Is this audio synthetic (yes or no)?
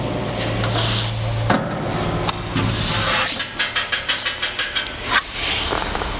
no